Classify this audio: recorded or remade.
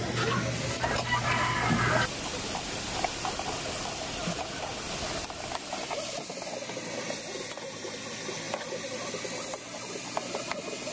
recorded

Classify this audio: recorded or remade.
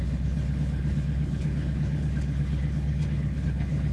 remade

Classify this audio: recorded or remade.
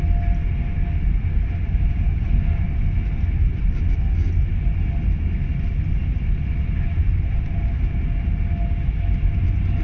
recorded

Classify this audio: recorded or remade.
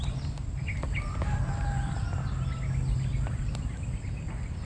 recorded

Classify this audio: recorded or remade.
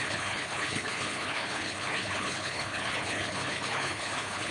remade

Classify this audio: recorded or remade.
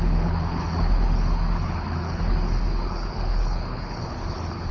remade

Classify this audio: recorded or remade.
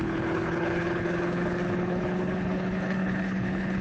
remade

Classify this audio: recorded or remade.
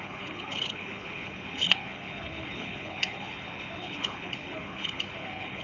remade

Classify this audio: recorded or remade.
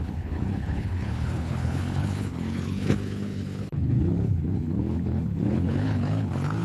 remade